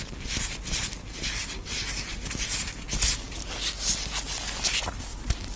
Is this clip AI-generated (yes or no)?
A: no